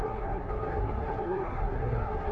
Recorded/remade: remade